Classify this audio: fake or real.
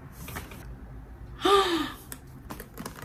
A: real